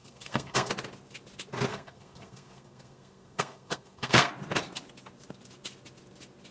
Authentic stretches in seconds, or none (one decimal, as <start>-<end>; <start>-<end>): 0.7-1.7; 4.3-6.5